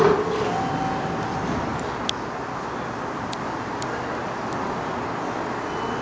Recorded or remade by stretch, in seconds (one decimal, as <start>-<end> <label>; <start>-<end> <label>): 0.0-6.0 recorded